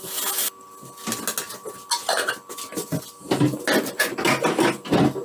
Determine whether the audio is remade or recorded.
recorded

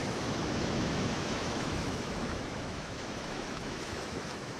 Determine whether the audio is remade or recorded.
remade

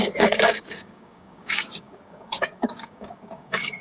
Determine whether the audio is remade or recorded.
remade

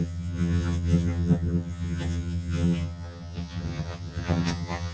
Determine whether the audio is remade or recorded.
remade